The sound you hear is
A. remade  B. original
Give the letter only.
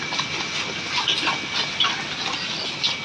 B